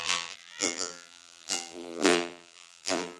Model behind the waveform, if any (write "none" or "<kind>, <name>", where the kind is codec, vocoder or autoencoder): vocoder, BigVGAN v2